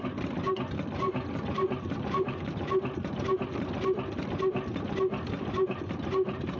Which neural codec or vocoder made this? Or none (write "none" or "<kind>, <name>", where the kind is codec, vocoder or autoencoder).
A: none